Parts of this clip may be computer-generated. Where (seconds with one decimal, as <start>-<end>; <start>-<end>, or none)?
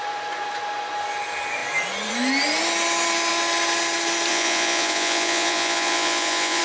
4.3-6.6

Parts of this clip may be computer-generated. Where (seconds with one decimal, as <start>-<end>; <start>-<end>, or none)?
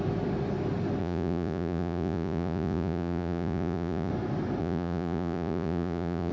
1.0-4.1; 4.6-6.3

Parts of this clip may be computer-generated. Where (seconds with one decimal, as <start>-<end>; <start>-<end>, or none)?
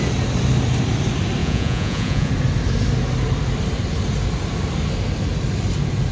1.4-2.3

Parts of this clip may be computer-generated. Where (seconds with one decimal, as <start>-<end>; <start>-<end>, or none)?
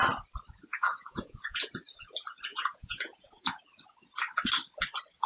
0.7-1.7; 2.5-3.6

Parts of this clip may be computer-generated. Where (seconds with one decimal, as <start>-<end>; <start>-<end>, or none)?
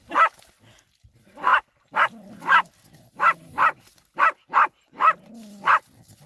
none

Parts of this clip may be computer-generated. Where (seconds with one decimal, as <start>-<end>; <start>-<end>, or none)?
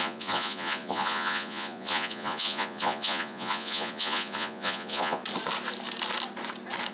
0.0-5.2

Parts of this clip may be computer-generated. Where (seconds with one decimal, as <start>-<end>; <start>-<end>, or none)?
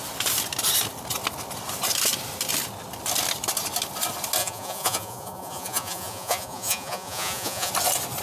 4.4-7.7